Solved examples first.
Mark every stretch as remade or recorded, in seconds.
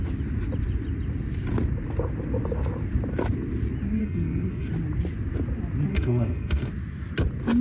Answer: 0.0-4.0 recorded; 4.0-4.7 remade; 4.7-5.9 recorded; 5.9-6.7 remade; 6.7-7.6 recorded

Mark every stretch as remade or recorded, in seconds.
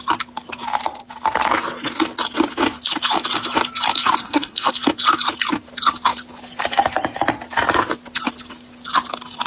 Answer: 0.0-4.2 recorded; 4.2-4.7 remade; 4.7-9.5 recorded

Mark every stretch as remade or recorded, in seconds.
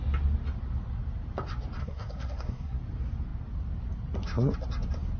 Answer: 0.0-1.8 recorded; 1.8-2.8 remade; 2.8-5.2 recorded